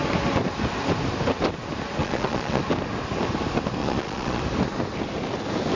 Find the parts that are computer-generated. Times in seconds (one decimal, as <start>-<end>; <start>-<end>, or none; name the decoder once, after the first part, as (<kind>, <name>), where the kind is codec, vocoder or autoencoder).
2.0-2.6 (vocoder, Vocos); 3.8-4.4